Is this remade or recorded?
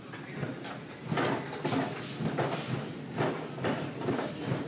recorded